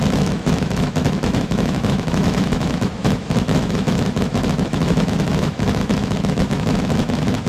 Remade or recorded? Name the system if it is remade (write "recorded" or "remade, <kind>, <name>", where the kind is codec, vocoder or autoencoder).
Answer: remade, autoencoder, DAC-VAE